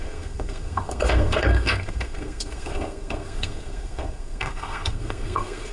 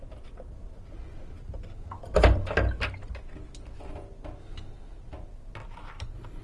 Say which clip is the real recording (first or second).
second